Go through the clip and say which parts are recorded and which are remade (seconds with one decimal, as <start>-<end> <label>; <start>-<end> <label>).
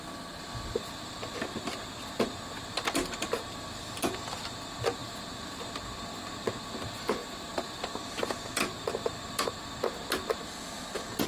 0.0-7.2 recorded; 7.2-8.0 remade; 8.0-11.3 recorded